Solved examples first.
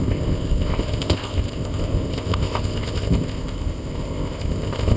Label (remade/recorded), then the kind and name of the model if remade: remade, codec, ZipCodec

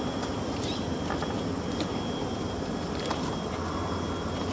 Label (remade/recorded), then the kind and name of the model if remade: recorded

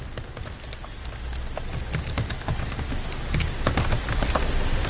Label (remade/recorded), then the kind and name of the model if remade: recorded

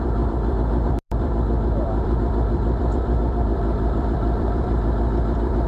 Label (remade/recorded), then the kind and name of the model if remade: remade, vocoder, BigVGAN v2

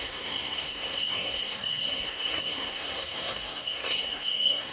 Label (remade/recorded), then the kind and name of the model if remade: remade, codec, SNAC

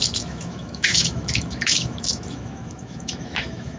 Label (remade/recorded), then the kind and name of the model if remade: remade, autoencoder, DAC-VAE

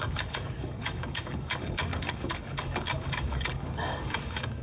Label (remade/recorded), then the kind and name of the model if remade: remade, codec, DAC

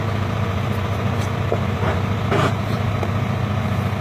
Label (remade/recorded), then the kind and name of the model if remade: remade, vocoder, BigVGAN v2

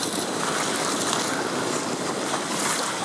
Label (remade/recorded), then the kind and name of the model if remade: recorded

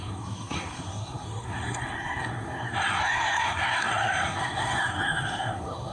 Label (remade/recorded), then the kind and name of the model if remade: remade, codec, SNAC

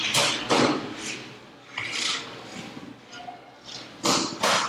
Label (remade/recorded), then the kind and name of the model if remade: recorded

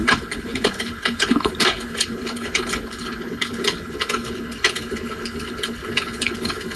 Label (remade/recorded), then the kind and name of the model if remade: remade, codec, HILCodec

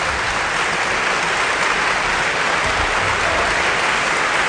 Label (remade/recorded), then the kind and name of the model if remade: recorded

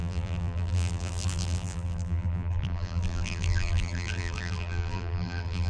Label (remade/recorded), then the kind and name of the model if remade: remade, vocoder, BigVGAN v2